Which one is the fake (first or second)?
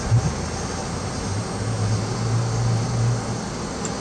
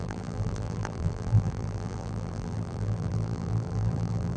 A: second